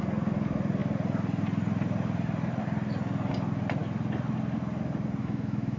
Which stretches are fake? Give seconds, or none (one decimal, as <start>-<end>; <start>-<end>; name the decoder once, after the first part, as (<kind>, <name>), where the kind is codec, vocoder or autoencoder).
5.2-5.8 (autoencoder, DAC-VAE)